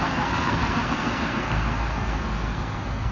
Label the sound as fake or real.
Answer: fake